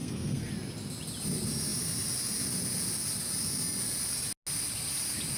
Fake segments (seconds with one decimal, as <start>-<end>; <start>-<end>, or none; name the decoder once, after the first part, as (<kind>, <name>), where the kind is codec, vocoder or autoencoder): 0.0-0.5 (codec, SNAC)